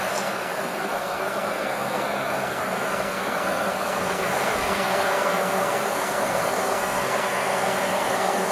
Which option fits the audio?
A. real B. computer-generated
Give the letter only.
B